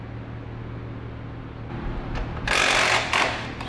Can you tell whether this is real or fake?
real